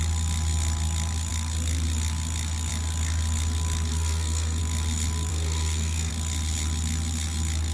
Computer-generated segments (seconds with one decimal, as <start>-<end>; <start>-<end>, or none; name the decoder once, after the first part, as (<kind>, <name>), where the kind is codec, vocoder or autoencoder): 3.9-4.6 (codec, SNAC); 5.3-6.1

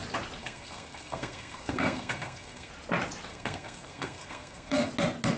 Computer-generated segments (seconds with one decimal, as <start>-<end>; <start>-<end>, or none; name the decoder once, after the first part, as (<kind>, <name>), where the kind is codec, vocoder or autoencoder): 0.4-2.7 (codec, SNAC); 3.3-4.9

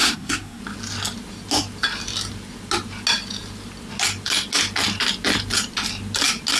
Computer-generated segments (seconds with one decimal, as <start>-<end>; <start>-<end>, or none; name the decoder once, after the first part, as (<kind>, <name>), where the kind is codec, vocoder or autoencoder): 0.0-0.6 (codec, SNAC)